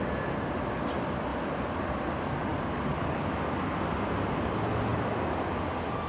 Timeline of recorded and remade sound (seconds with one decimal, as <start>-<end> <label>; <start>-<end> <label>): 0.0-2.5 recorded; 2.5-3.6 remade; 3.6-6.1 recorded